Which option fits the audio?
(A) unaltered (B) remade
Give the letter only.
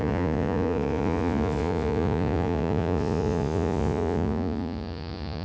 B